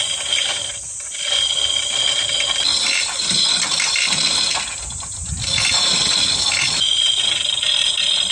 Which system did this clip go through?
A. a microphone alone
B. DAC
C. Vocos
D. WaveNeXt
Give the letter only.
A